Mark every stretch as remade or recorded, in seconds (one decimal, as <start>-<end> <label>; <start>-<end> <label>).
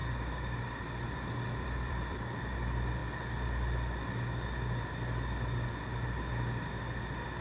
0.0-2.4 remade; 2.4-7.4 recorded